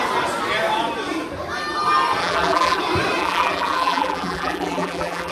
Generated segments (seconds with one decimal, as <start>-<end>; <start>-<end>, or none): 2.2-2.8; 3.2-5.3